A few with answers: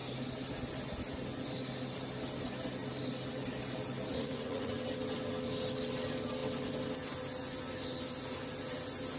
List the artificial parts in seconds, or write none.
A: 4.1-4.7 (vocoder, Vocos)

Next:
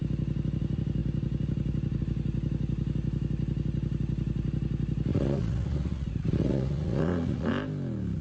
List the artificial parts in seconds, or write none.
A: 5.1-7.5 (vocoder, Vocos)